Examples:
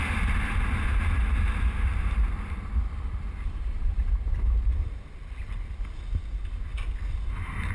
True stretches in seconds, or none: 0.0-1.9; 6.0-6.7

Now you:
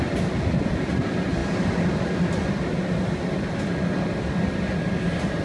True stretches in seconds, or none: 0.0-5.4

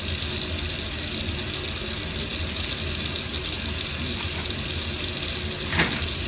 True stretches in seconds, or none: 0.0-6.3

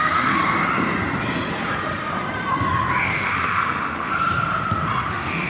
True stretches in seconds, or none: 0.4-3.0; 4.1-5.1

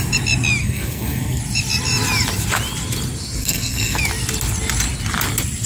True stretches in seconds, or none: 0.0-0.6; 1.4-3.4; 4.0-5.7

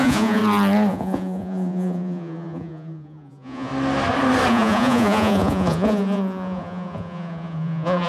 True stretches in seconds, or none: 0.4-0.9; 3.7-4.5